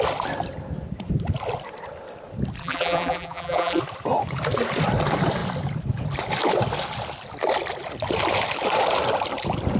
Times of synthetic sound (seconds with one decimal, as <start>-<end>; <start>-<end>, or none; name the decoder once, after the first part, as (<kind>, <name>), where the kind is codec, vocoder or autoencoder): 2.6-3.8 (vocoder, BigVGAN v2)